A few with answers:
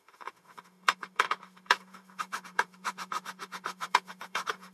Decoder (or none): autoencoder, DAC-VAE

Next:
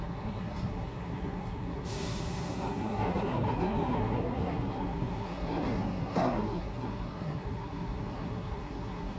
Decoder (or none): codec, SNAC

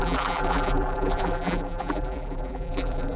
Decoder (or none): vocoder, BigVGAN v2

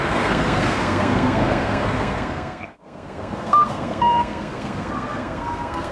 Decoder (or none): codec, SNAC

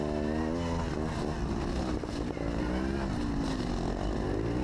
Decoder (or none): none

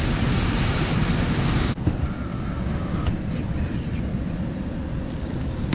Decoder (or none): none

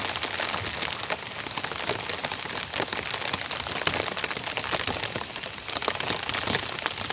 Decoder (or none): none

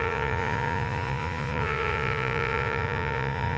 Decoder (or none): vocoder, Vocos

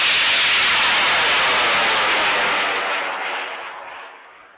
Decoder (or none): none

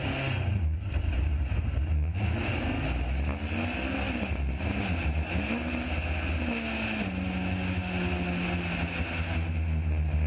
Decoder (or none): none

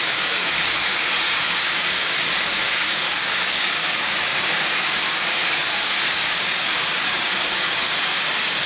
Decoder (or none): codec, DAC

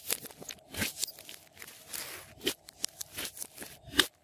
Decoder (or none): none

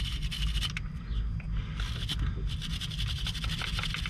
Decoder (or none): none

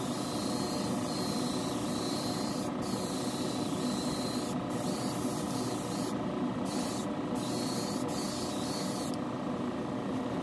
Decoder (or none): none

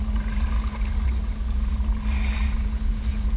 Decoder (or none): none